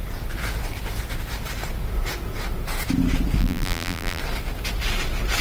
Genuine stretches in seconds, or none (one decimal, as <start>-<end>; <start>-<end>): 0.0-3.4; 4.2-5.4